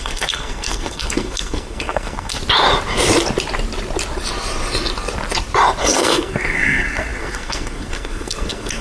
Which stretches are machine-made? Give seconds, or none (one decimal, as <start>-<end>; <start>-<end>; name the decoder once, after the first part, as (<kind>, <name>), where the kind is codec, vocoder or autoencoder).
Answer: 0.0-2.4 (codec, SNAC); 5.8-8.8